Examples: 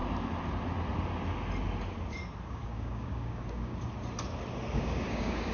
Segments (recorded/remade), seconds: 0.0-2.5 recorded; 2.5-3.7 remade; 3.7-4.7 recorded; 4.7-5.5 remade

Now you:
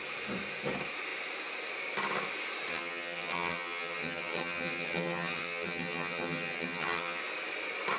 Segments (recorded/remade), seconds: 0.0-2.7 recorded; 2.7-7.2 remade; 7.2-8.0 recorded

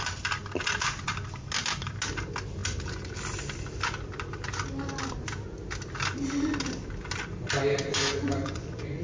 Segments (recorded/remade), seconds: 0.0-7.9 recorded; 7.9-9.0 remade

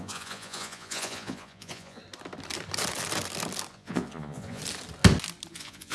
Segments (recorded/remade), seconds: 0.0-2.0 remade; 2.0-3.7 recorded; 3.7-4.6 remade; 4.6-5.5 recorded; 5.5-5.9 remade

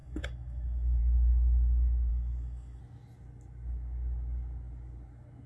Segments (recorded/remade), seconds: 0.0-1.0 remade; 1.0-2.1 recorded; 2.1-2.8 remade; 2.8-5.5 recorded

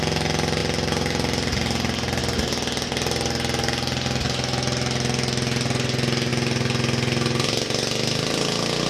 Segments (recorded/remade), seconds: 0.0-8.9 recorded